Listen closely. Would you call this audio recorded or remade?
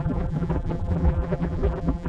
remade